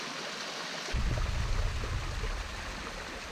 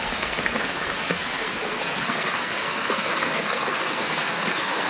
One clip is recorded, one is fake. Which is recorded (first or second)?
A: first